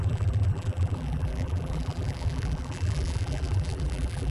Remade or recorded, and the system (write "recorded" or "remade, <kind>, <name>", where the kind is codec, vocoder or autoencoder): remade, vocoder, BigVGAN v2